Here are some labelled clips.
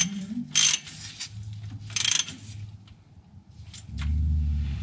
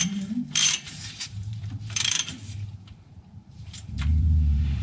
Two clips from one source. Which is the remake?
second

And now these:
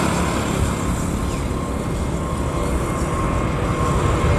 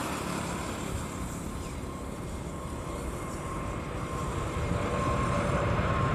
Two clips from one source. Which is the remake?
second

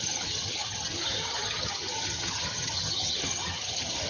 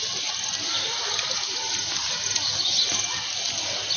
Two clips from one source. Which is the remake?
first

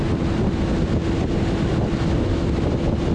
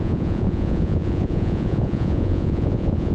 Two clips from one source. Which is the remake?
second